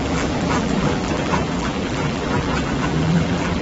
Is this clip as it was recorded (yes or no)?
no